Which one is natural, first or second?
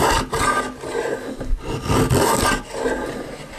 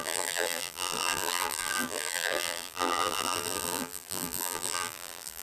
first